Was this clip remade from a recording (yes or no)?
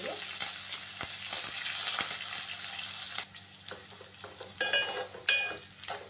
no